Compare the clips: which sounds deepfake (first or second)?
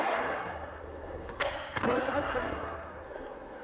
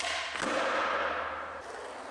first